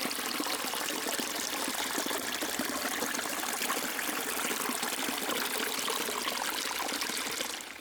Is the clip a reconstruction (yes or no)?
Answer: no